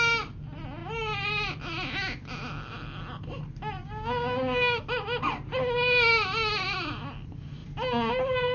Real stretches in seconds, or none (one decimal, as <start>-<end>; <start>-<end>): 0.0-3.8; 4.8-8.5